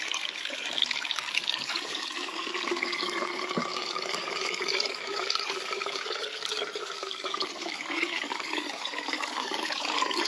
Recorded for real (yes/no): no